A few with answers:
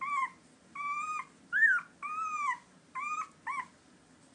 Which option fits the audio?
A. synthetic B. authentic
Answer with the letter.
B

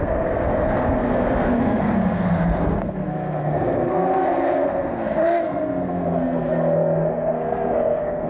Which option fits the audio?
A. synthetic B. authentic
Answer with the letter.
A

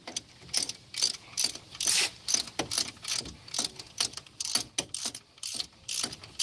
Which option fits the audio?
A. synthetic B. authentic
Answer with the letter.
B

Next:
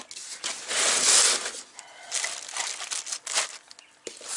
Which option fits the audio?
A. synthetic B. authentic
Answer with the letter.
B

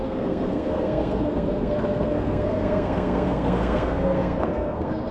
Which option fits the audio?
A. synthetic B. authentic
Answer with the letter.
A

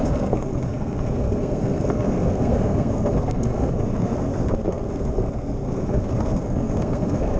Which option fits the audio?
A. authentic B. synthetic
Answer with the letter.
B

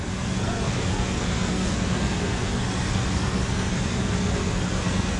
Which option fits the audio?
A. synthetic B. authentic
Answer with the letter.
A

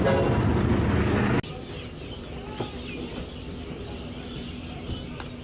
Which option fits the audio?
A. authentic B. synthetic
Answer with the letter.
A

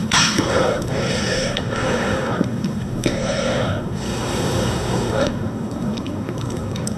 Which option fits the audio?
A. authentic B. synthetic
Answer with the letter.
B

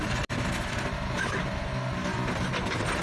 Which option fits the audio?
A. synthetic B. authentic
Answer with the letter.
B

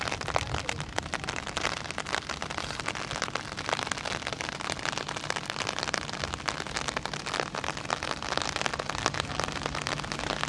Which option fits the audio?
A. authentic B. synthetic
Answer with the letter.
A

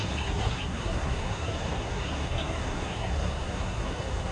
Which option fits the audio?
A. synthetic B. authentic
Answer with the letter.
A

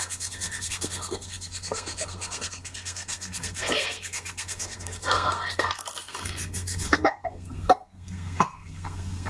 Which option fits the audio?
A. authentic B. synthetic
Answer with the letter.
B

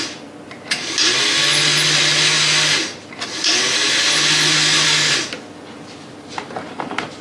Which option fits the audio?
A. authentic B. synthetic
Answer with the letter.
A